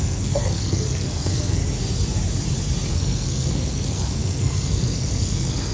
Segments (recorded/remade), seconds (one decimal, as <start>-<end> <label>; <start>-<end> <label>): 0.0-1.6 remade; 1.6-2.9 recorded; 2.9-5.7 remade